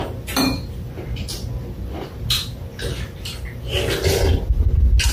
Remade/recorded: recorded